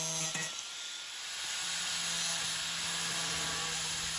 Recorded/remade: recorded